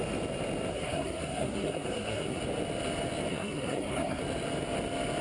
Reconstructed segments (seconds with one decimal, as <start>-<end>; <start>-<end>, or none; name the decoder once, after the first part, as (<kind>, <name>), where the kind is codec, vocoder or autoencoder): 0.7-2.4 (codec, SNAC); 3.3-4.2